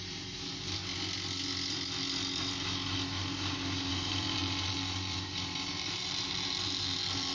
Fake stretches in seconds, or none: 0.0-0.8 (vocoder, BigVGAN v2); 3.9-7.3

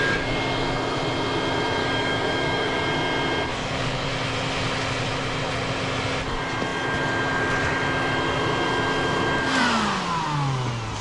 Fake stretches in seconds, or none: 1.8-2.8 (codec, DAC); 3.5-4.1

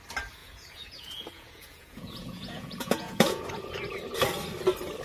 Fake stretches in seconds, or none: 0.4-3.4 (vocoder, Vocos)

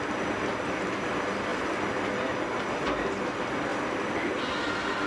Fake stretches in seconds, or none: none

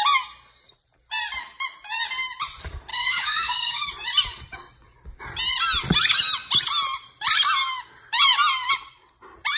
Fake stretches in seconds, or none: 2.9-3.9 (codec, DAC)

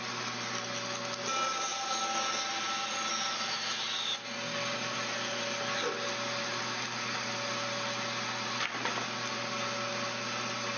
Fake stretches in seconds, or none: none

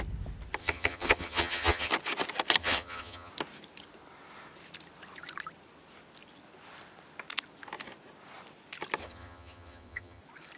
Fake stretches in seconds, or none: 0.6-1.9 (vocoder, HiFi-GAN); 2.6-3.3; 9.0-10.2

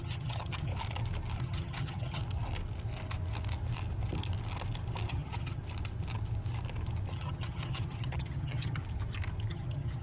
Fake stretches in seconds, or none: 0.0-0.7 (vocoder, HiFi-GAN); 1.4-2.2; 5.1-5.6; 7.1-8.8; 9.5-10.0